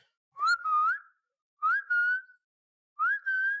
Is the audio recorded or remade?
remade